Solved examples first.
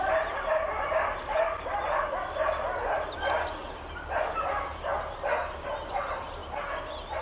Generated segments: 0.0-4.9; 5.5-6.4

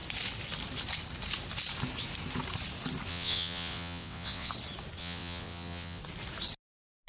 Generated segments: 3.1-4.5; 5.0-6.0

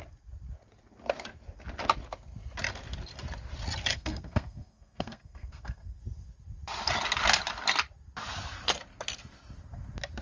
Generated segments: 3.9-6.0

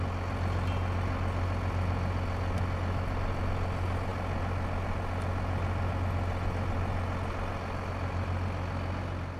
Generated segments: none

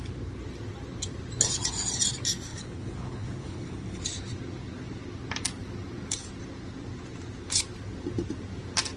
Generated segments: 2.5-4.0

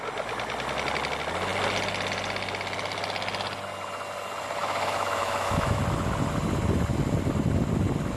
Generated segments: 4.6-5.8

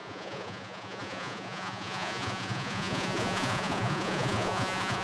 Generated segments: 0.0-5.0

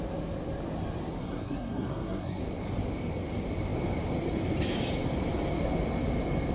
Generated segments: 1.2-2.4